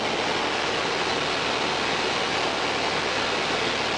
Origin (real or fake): real